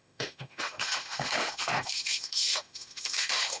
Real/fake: fake